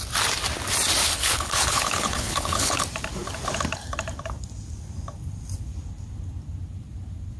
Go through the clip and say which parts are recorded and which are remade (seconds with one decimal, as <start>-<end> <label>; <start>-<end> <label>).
0.0-1.0 recorded; 1.0-2.8 remade; 2.8-7.4 recorded